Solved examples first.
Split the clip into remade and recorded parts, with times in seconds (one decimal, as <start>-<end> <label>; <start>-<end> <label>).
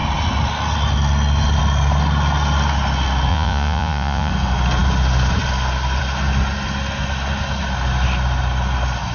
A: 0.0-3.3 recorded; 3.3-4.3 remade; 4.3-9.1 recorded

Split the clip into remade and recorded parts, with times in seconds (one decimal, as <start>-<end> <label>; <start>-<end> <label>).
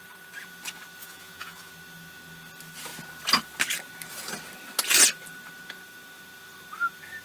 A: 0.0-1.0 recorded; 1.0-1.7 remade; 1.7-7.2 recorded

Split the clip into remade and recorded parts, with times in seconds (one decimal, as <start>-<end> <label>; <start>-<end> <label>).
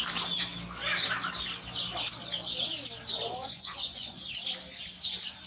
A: 0.0-3.4 recorded; 3.4-4.2 remade; 4.2-5.5 recorded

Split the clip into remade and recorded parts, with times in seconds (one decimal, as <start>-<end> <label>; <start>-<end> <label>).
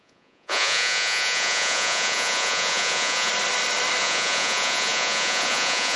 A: 0.0-3.3 remade; 3.3-4.0 recorded; 4.0-6.0 remade